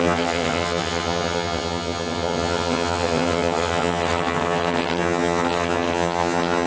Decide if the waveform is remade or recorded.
remade